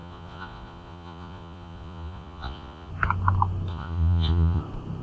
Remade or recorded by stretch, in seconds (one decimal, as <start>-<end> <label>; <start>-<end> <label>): 0.0-2.9 remade; 2.9-3.7 recorded; 3.7-4.6 remade; 4.6-5.0 recorded